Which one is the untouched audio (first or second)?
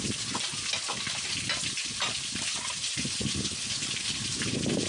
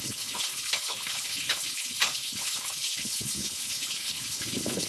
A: first